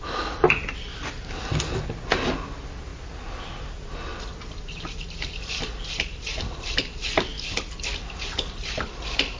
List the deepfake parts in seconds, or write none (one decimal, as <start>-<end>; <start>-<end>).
none